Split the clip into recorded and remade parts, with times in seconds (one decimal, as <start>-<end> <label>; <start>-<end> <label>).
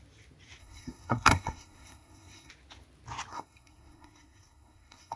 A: 0.0-0.6 recorded; 0.6-2.5 remade; 2.5-3.3 recorded; 3.3-5.2 remade